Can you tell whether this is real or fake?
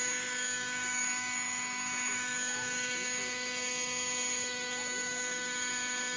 fake